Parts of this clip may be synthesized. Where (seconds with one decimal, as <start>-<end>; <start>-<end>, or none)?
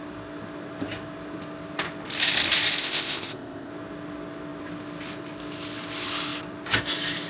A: 2.8-3.7